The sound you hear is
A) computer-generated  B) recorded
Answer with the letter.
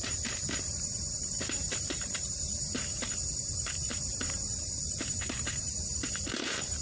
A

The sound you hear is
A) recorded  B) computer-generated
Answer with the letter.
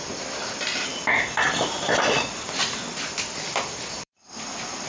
B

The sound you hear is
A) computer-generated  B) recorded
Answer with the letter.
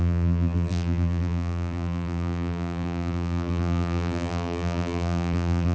A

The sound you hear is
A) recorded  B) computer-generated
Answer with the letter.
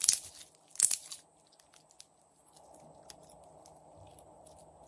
A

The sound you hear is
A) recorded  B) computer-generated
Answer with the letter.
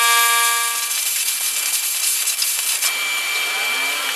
A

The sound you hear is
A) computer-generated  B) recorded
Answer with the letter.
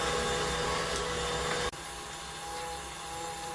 B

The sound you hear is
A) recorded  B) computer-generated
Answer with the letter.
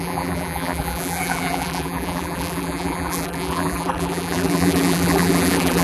B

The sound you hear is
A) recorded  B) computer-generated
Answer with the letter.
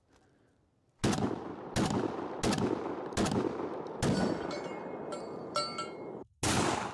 A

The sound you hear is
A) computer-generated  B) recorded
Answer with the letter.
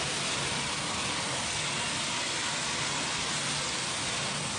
B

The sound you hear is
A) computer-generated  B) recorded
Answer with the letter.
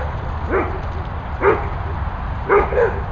B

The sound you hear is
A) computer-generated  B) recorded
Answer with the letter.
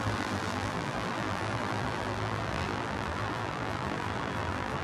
A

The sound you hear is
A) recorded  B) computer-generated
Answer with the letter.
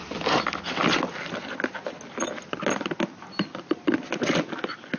A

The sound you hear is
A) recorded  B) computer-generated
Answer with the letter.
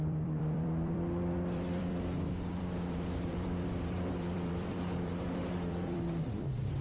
B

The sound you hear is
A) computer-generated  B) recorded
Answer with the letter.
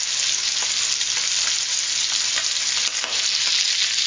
B